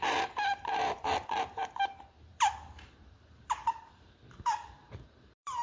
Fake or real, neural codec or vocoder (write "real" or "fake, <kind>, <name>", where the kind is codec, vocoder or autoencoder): fake, vocoder, BigVGAN v2